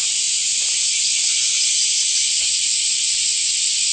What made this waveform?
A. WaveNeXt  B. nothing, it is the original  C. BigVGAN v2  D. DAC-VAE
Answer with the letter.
B